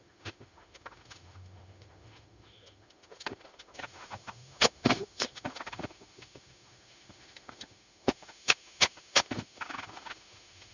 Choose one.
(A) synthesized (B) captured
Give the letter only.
A